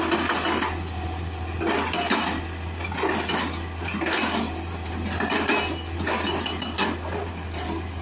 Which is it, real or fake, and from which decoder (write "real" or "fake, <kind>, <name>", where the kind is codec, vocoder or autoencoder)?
real